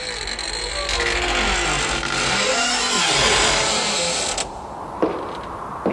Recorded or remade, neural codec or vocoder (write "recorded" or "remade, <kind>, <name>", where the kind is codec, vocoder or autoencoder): recorded